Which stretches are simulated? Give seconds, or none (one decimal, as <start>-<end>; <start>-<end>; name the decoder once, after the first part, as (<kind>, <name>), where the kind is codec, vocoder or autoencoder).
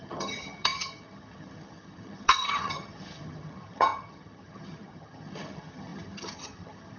0.0-7.0 (vocoder, HiFi-GAN)